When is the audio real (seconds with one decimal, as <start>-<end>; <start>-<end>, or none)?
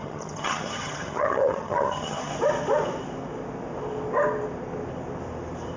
2.3-5.8